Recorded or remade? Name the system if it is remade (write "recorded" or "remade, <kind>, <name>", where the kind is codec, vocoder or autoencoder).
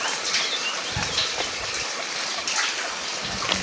recorded